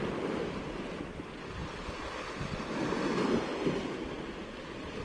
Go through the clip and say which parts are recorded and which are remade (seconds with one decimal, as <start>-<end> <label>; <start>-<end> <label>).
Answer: 0.0-5.0 recorded